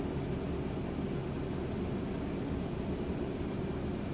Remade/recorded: recorded